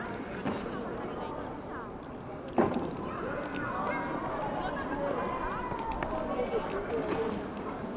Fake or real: real